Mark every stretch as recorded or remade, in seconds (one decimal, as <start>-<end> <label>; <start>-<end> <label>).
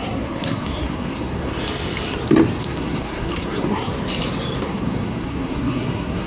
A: 0.0-1.5 remade; 1.5-2.6 recorded; 2.6-3.9 remade; 3.9-4.6 recorded; 4.6-6.3 remade